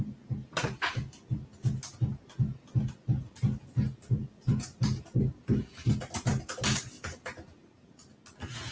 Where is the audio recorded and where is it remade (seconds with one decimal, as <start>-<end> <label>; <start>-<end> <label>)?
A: 0.0-8.7 recorded